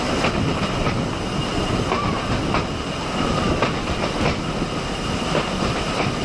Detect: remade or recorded recorded